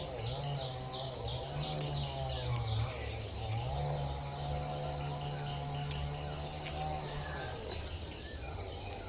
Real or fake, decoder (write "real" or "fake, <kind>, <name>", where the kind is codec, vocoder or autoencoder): real